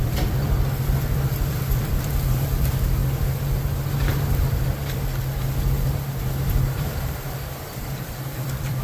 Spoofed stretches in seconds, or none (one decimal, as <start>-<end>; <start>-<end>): 0.0-3.0; 6.8-8.8